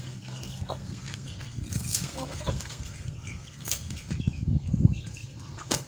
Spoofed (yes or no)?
yes